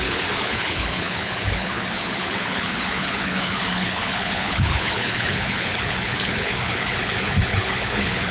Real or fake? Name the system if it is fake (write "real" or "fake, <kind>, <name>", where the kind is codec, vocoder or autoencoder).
fake, codec, HILCodec